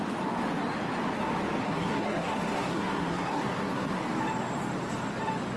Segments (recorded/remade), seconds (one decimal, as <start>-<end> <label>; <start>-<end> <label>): 0.0-1.6 recorded; 1.6-4.0 remade; 4.0-5.6 recorded